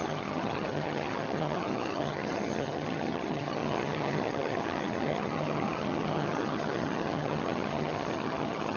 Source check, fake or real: fake